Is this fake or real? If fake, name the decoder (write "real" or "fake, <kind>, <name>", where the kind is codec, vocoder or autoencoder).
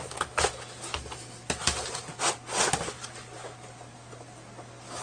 real